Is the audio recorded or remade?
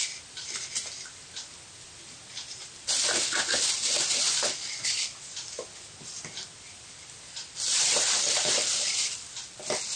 recorded